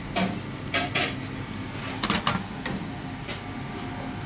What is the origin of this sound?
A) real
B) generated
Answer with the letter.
A